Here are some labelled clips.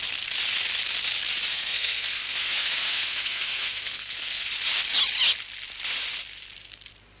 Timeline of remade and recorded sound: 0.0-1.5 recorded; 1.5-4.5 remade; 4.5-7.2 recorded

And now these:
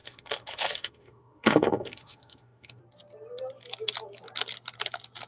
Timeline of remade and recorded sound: 0.0-2.8 remade; 2.8-5.3 recorded

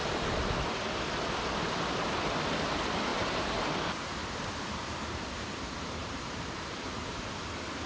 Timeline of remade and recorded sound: 0.0-3.1 recorded; 3.1-3.7 remade; 3.7-4.2 recorded; 4.2-5.3 remade; 5.3-6.0 recorded; 6.0-7.2 remade; 7.2-7.9 recorded

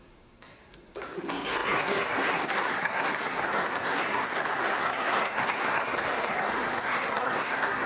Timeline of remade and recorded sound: 0.0-7.9 remade

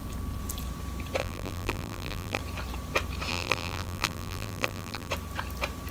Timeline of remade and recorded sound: 0.0-1.2 recorded; 1.2-2.4 remade; 2.4-3.3 recorded; 3.3-5.1 remade; 5.1-5.9 recorded

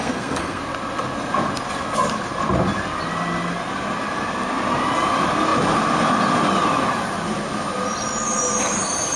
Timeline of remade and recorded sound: 0.0-0.6 remade; 0.6-9.2 recorded